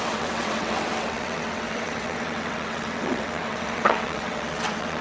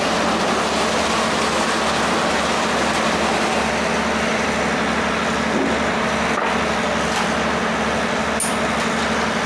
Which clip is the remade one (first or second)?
first